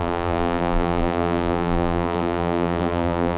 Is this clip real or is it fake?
fake